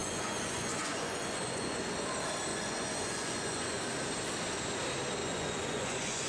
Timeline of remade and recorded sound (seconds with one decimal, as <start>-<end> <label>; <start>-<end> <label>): 0.0-1.8 remade; 1.8-2.5 recorded; 2.5-3.8 remade; 3.8-5.2 recorded; 5.2-6.3 remade